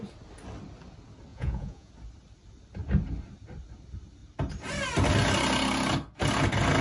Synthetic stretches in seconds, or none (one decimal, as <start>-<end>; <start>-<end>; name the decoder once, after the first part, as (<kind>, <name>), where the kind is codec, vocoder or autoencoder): 1.3-1.9 (vocoder, Vocos)